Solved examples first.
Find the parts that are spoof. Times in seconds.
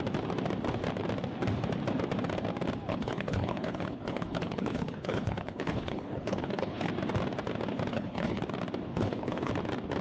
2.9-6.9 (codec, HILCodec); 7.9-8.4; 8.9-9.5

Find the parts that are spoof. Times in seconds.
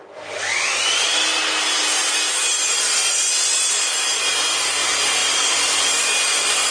none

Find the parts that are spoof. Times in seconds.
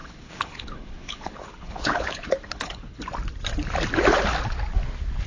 0.0-3.0 (codec, HILCodec)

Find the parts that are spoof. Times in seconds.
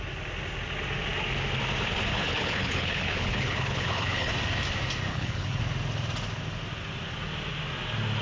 2.1-4.3 (codec, HILCodec); 5.1-5.6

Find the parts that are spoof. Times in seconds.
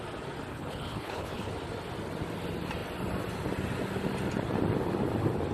0.5-1.5 (codec, HILCodec)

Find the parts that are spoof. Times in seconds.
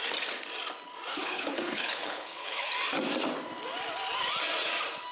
1.1-2.7 (codec, HILCodec)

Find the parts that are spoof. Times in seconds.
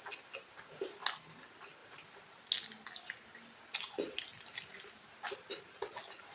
none